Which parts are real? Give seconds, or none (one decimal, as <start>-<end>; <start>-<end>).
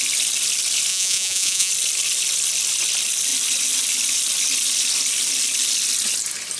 0.0-0.9; 1.7-6.6